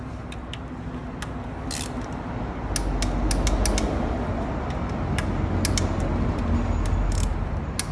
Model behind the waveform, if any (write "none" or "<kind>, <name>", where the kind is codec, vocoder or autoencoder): none